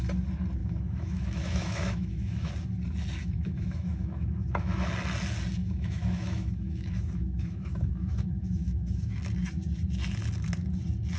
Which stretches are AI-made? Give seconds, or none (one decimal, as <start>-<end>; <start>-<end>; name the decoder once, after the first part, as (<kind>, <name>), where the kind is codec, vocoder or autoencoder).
0.6-2.5 (autoencoder, DAC-VAE); 3.2-4.9; 5.6-9.2